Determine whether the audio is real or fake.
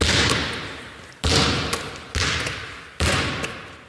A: real